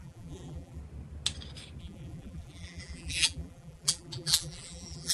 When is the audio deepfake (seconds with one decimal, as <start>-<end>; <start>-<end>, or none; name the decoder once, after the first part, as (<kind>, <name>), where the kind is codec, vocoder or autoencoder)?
0.0-0.8 (vocoder, BigVGAN v2); 1.8-5.1